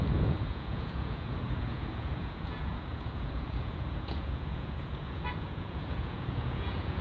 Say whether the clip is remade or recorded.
remade